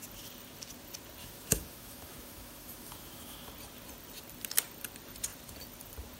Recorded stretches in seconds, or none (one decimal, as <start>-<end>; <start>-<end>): 0.0-1.2; 3.5-6.2